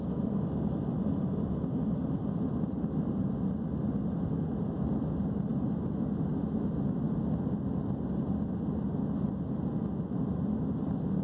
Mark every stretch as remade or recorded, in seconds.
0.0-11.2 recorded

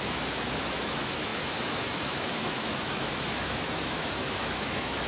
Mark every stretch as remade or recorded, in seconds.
0.0-5.1 remade

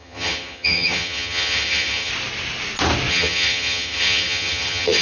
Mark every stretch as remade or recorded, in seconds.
0.0-2.1 remade; 2.1-3.1 recorded; 3.1-5.0 remade